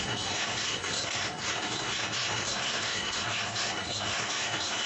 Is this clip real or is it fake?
fake